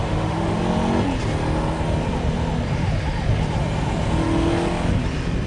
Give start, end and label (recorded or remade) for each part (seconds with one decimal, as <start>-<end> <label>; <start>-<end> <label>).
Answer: 0.0-0.6 remade; 0.6-5.5 recorded